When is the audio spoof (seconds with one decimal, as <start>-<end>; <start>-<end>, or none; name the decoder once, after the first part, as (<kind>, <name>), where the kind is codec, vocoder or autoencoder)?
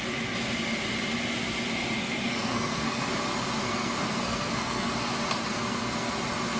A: 2.0-3.1 (codec, SNAC); 3.6-4.9; 5.5-6.1